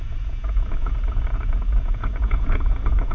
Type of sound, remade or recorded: remade